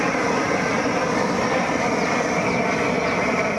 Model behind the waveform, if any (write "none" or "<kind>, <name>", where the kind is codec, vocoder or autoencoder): vocoder, BigVGAN v2